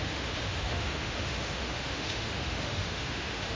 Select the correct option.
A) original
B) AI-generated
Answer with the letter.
B